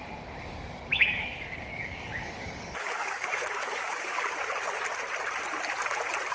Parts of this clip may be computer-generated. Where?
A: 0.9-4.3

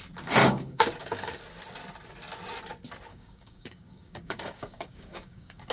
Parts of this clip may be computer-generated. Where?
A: 0.4-1.4; 3.1-5.7